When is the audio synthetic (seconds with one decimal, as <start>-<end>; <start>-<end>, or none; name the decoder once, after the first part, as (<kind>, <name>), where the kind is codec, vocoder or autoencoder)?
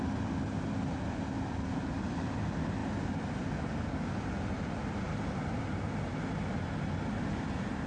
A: none